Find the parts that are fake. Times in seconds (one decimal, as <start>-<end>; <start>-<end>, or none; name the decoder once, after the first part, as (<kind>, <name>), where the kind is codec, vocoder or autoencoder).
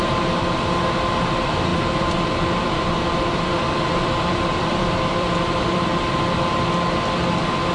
1.7-6.3 (vocoder, BigVGAN v2)